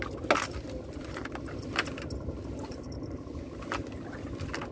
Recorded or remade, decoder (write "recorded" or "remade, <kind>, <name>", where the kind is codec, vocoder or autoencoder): recorded